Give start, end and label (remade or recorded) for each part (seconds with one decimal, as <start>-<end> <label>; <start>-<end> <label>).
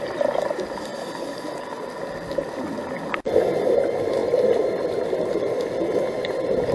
0.0-6.7 recorded